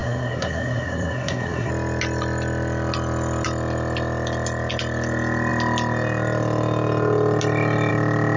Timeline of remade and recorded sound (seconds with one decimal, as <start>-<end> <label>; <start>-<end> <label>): 0.0-1.7 remade; 1.7-8.4 recorded